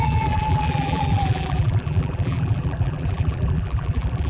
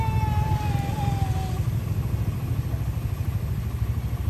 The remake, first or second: first